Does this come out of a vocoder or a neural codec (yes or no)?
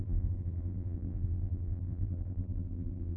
yes